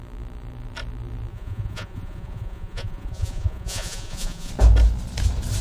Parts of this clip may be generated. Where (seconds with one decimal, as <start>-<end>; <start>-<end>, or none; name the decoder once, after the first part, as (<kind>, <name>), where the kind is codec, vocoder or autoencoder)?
1.3-4.5 (vocoder, Vocos)